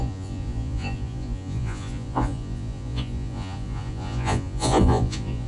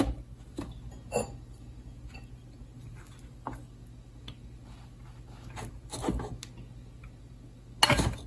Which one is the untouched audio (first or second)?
second